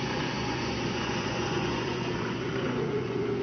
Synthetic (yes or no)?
yes